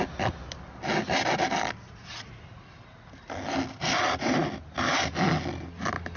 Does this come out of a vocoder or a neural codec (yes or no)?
no